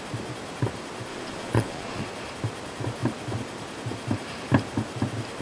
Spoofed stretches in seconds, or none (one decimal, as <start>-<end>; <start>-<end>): 1.1-2.0